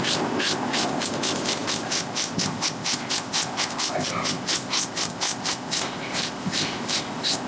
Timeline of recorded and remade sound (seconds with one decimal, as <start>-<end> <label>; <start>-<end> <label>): 0.0-7.5 remade